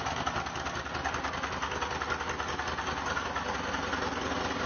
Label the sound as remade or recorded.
recorded